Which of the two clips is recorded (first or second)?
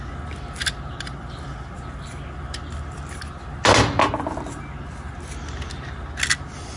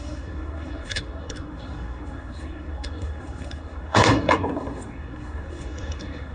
first